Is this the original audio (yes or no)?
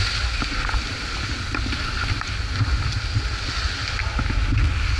yes